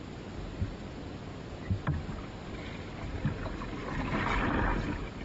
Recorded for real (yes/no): yes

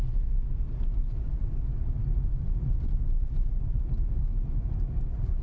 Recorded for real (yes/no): yes